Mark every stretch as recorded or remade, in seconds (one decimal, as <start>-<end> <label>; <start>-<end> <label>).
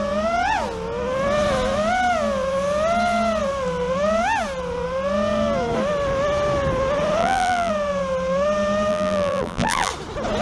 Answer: 0.0-7.2 recorded; 7.2-7.7 remade; 7.7-8.9 recorded; 8.9-9.9 remade; 9.9-10.4 recorded